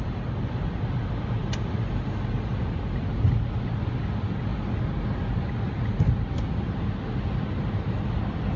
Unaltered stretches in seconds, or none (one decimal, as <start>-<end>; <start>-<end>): 0.0-8.6